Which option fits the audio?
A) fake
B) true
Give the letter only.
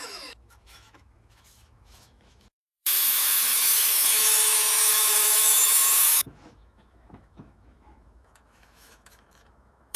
A